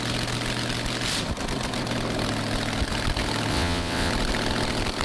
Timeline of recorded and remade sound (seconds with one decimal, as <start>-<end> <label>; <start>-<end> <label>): 0.0-3.5 recorded; 3.5-4.1 remade; 4.1-5.0 recorded